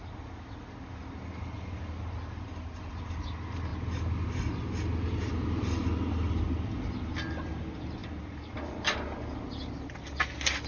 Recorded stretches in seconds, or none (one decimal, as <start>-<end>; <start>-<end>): 3.7-5.3; 8.0-10.0